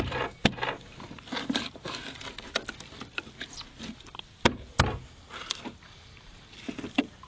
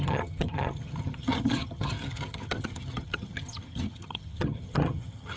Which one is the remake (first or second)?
second